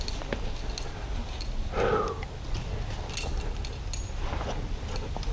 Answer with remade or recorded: recorded